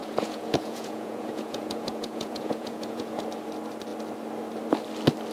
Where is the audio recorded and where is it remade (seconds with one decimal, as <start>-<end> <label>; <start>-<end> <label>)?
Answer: 0.0-3.2 remade; 3.2-5.3 recorded